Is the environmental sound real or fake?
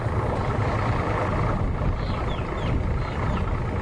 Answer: real